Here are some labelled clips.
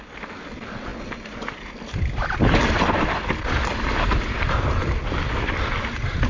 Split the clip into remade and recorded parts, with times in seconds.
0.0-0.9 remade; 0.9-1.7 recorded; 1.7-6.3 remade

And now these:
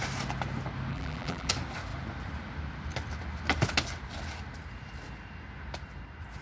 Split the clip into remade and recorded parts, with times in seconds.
0.0-0.9 recorded; 0.9-1.5 remade; 1.5-6.4 recorded

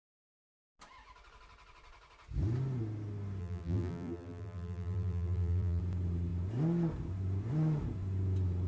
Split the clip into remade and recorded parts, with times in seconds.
0.0-3.4 recorded; 3.4-5.8 remade; 5.8-8.7 recorded

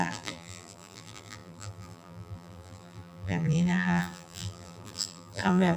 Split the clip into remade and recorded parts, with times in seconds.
0.0-5.8 remade

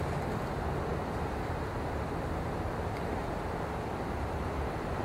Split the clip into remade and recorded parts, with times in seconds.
0.0-5.0 recorded

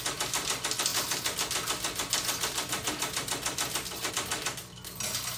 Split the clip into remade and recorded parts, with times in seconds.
0.0-5.4 recorded

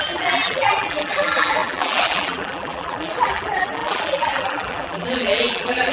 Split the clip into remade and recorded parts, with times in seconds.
0.0-5.9 remade

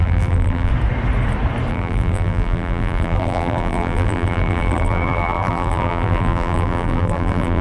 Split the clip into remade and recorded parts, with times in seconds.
0.0-0.7 remade; 0.7-1.7 recorded; 1.7-7.6 remade